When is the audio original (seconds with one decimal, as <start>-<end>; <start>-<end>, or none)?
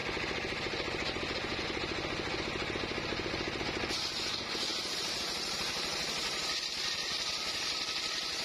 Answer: 0.0-4.7; 5.7-8.4